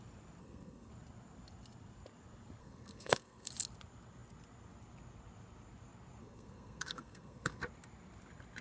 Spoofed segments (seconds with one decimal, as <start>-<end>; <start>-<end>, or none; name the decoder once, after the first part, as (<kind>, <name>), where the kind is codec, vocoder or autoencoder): 0.4-0.9 (codec, SNAC); 2.6-3.5; 6.2-7.6

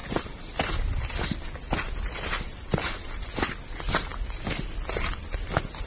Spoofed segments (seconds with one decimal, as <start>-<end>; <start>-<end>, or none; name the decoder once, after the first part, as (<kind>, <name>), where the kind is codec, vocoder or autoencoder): none

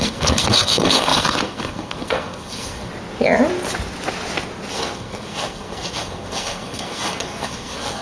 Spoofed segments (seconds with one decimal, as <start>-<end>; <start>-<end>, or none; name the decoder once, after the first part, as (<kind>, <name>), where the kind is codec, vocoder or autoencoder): 0.0-2.9 (codec, SNAC); 4.7-8.0

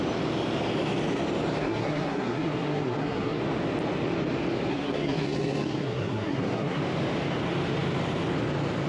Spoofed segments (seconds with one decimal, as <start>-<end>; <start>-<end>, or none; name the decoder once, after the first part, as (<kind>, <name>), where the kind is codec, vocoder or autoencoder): 1.6-3.4 (codec, SNAC); 4.7-6.8

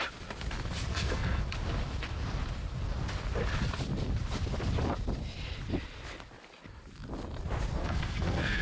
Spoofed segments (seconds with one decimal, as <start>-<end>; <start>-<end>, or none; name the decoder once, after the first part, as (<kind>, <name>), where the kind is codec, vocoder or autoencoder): 0.9-1.4 (codec, SNAC); 7.8-8.6

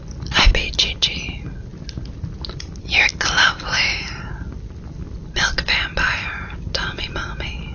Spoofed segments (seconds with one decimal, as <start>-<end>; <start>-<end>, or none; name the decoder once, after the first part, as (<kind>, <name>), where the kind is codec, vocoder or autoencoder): none